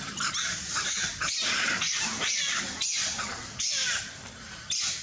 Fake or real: fake